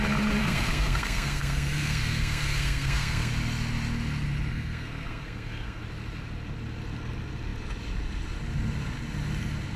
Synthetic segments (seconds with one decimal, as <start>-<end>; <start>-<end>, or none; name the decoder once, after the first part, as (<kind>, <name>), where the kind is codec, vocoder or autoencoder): 0.4-3.3 (codec, SNAC); 4.5-5.8